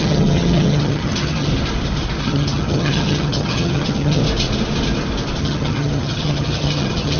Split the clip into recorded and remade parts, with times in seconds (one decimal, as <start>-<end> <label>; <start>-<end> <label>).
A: 0.0-1.5 remade; 1.5-2.2 recorded; 2.2-4.2 remade; 4.2-5.4 recorded; 5.4-7.2 remade